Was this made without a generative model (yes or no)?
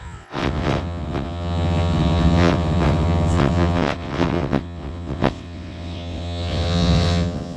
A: no